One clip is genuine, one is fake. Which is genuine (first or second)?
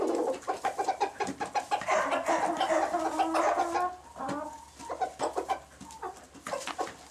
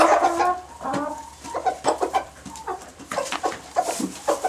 first